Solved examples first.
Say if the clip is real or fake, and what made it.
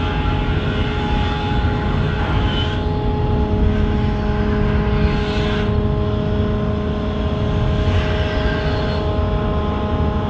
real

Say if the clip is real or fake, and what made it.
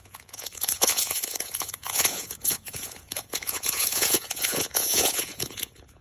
fake, vocoder, Vocos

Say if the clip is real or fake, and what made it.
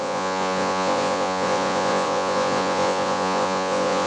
fake, vocoder, Vocos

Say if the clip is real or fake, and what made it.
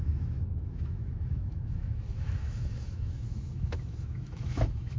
fake, autoencoder, DAC-VAE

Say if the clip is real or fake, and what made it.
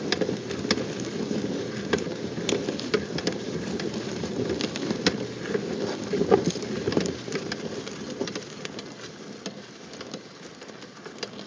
real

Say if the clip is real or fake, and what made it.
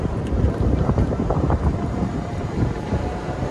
fake, vocoder, BigVGAN v2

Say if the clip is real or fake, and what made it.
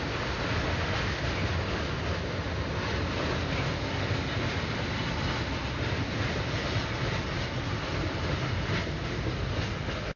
real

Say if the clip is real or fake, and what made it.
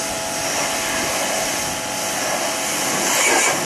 real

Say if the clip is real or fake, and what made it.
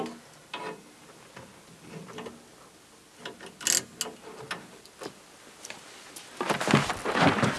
real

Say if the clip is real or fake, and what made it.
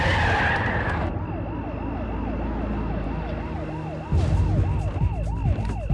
real